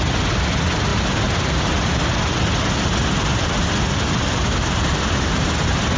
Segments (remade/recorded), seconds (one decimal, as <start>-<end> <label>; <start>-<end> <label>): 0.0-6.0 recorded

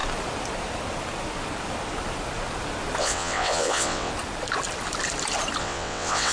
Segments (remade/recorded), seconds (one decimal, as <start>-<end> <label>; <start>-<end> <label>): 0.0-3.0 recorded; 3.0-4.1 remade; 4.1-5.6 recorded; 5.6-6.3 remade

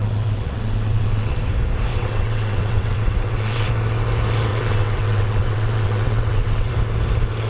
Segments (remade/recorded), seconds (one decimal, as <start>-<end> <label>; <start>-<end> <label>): 0.0-1.4 remade; 1.4-1.9 recorded; 1.9-3.7 remade; 3.7-4.5 recorded; 4.5-6.7 remade; 6.7-7.5 recorded

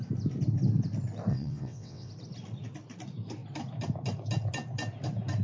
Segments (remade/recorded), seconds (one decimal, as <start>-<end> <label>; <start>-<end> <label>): 0.0-1.3 recorded; 1.3-2.1 remade; 2.1-5.4 recorded

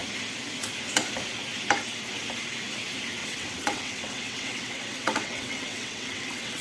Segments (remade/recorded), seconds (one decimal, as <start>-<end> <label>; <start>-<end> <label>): 0.0-3.2 recorded; 3.2-6.6 remade

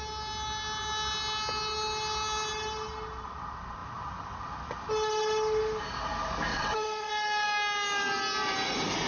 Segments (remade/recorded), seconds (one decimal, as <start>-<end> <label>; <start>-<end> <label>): 0.0-6.5 recorded; 6.5-7.1 remade; 7.1-9.1 recorded

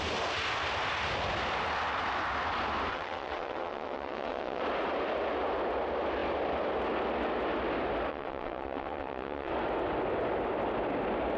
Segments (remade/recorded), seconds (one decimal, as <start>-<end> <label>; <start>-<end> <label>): 0.0-2.9 recorded; 2.9-4.6 remade; 4.6-8.1 recorded; 8.1-9.5 remade; 9.5-11.4 recorded

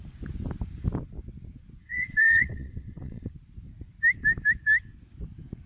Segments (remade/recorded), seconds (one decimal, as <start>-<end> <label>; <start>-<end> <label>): 0.0-1.8 recorded; 1.8-3.3 remade; 3.3-5.7 recorded